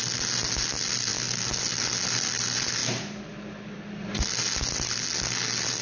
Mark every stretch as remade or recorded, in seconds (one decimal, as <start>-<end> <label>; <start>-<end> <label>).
0.0-5.8 recorded